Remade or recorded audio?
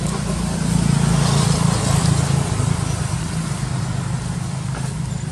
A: recorded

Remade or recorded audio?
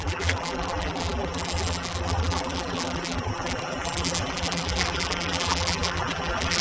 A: remade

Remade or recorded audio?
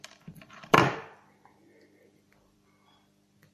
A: remade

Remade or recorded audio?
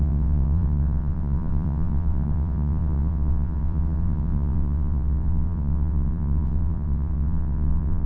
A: remade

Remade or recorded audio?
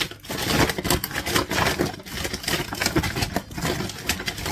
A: recorded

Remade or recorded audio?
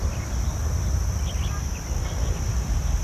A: recorded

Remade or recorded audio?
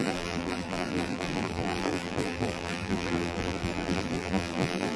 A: remade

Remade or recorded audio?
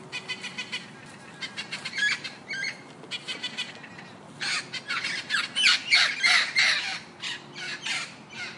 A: recorded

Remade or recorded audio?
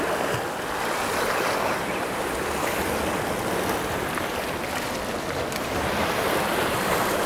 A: recorded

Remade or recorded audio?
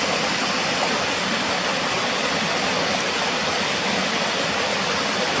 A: recorded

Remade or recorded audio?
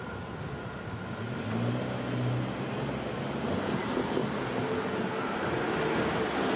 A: recorded